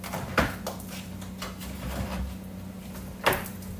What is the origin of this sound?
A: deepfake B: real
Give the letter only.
B